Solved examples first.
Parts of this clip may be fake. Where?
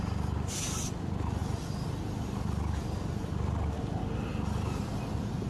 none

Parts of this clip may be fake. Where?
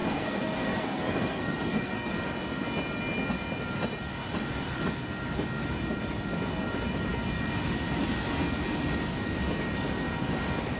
0.0-2.1 (codec, SNAC)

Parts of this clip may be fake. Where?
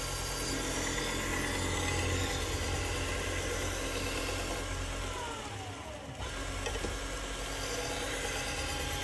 none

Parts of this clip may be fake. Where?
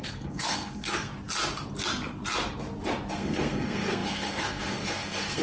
0.0-1.1 (codec, SNAC); 3.1-5.4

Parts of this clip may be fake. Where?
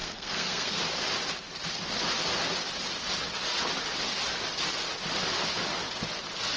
0.0-0.8 (codec, SNAC)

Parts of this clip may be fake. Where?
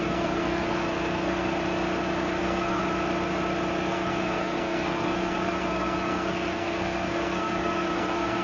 0.0-1.5 (codec, SNAC); 2.4-2.8; 3.9-8.4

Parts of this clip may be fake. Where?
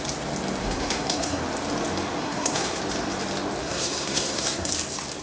0.6-1.4 (codec, SNAC); 2.2-2.8; 3.6-4.7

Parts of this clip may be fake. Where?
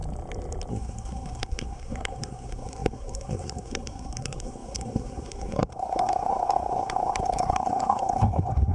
0.7-8.7 (codec, SNAC)